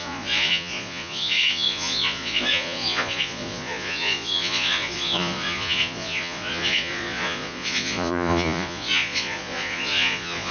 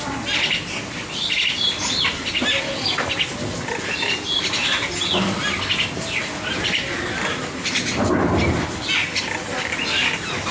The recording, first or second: second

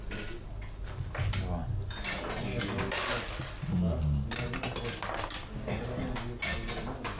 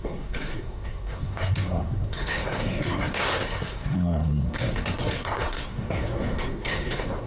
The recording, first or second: first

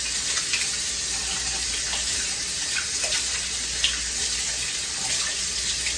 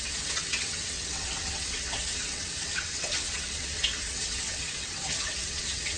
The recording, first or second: first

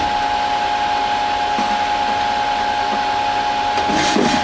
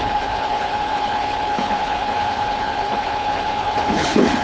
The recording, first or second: first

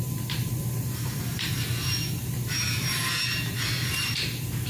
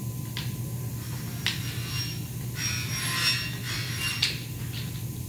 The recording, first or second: second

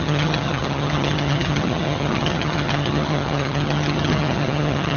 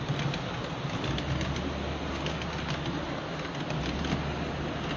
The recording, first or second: second